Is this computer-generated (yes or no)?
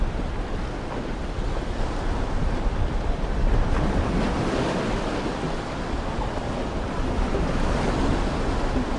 no